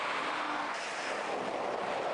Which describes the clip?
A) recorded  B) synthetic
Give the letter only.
A